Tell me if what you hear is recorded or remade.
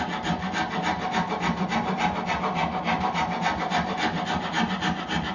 recorded